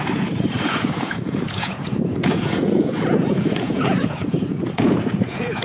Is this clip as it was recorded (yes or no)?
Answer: no